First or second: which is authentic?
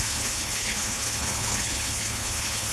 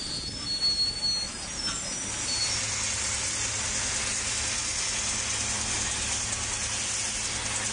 second